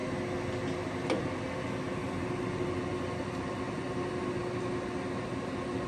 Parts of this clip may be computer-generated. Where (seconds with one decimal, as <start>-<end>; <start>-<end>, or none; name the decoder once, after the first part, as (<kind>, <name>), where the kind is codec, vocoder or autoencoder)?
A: none